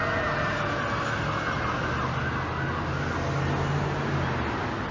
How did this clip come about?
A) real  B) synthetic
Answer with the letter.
A